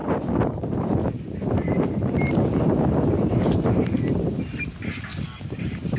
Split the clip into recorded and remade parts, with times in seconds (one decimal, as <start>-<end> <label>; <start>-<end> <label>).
0.0-0.7 recorded; 0.7-5.1 remade; 5.1-5.6 recorded; 5.6-6.0 remade